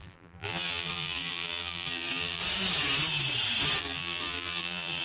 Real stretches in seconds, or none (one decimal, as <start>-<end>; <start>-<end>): 2.4-3.8